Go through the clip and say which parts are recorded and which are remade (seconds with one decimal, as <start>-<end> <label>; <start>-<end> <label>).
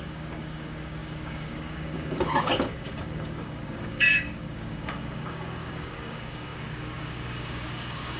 0.0-8.2 remade